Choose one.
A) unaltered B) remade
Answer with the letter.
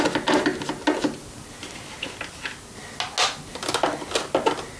A